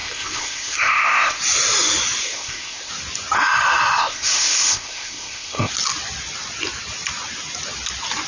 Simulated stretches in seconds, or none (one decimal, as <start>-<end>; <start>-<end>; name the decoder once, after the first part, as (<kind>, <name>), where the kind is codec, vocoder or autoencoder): 0.0-1.4 (codec, ZipCodec); 2.2-2.9; 4.0-5.7